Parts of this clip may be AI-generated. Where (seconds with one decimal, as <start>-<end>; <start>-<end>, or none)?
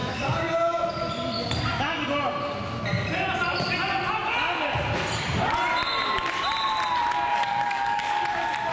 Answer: 7.3-8.2